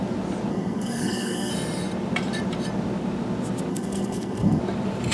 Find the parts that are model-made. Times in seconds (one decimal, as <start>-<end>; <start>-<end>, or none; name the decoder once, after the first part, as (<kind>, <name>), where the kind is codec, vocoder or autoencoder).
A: 0.5-1.5 (codec, SNAC); 3.7-4.6